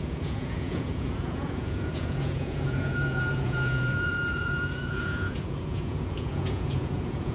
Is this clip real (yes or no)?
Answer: no